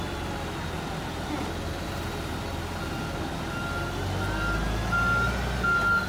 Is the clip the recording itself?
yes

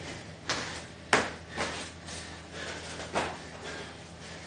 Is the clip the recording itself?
yes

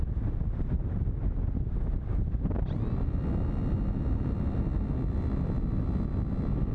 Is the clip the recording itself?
yes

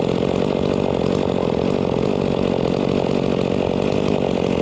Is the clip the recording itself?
yes